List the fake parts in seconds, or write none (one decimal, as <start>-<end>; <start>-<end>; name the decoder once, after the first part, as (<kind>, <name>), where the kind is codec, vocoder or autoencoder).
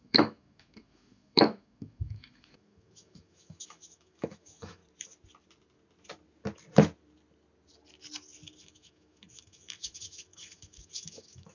0.0-4.8 (autoencoder, DAC-VAE); 8.6-11.5